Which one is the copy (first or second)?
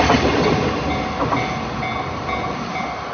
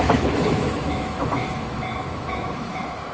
second